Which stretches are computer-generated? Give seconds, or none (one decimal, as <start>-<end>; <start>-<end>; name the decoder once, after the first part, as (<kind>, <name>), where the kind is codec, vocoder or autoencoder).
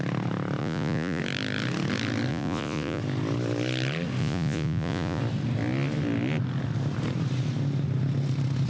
0.6-1.2 (vocoder, Vocos); 2.3-3.0; 4.2-5.2